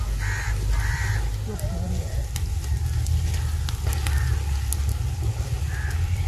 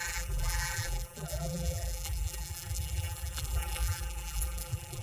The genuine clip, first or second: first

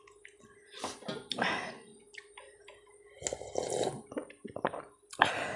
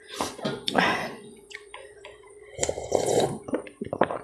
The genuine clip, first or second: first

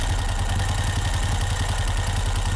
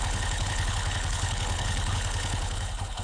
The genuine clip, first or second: first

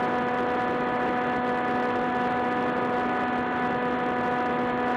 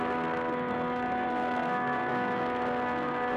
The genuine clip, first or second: first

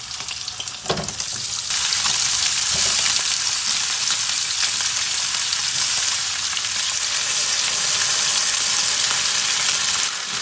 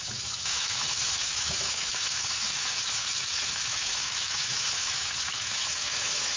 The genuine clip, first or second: first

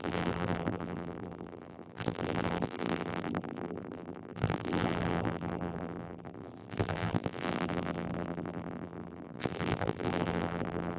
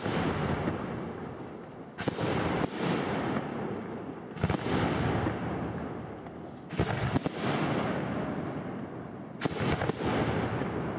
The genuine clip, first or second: second